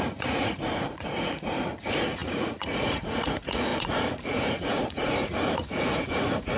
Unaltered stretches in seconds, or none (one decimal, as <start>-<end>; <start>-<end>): none